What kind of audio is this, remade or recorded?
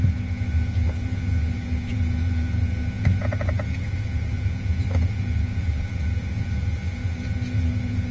remade